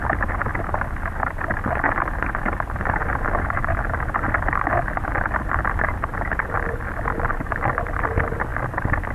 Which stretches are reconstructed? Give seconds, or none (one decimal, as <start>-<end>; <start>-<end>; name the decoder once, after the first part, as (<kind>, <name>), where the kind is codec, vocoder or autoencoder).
none